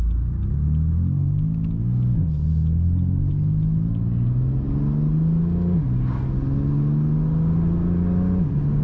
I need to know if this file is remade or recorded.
recorded